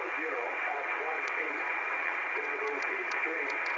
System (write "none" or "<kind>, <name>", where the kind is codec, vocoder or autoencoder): vocoder, WaveNeXt